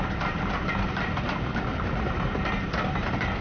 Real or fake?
real